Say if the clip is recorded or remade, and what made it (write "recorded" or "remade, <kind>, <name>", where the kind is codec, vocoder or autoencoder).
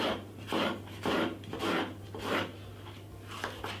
remade, vocoder, BigVGAN v2